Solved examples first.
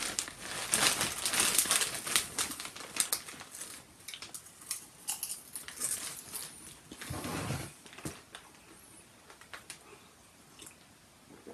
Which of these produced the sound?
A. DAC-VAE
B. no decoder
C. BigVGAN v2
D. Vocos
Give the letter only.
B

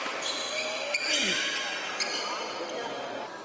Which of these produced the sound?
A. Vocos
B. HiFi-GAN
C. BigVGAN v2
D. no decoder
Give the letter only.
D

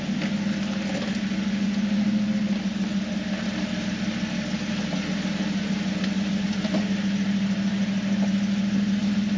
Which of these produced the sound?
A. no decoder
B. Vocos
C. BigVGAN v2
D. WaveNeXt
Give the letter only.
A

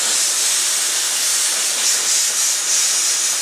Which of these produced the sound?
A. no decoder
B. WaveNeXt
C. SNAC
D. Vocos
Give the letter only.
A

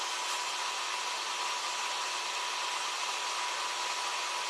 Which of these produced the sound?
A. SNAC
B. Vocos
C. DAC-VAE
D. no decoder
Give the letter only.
D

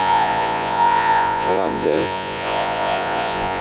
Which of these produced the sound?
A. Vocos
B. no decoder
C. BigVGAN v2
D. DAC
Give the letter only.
A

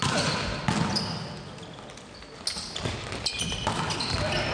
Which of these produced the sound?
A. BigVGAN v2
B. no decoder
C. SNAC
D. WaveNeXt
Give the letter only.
B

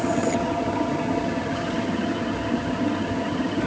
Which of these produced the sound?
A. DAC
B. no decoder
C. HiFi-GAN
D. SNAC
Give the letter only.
C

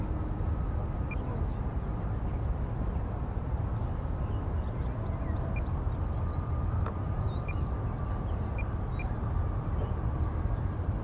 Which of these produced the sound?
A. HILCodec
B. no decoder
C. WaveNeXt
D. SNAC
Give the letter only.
B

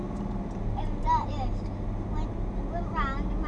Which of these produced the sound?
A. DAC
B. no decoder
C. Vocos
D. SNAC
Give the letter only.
B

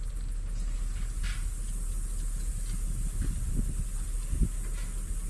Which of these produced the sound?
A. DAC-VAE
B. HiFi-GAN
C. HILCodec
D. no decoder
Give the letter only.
D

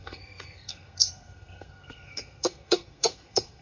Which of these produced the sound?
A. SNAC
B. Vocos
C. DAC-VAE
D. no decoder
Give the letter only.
A